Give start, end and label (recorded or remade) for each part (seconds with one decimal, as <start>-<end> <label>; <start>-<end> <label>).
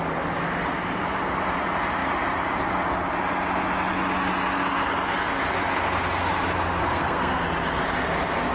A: 0.0-6.8 recorded; 6.8-7.4 remade; 7.4-8.5 recorded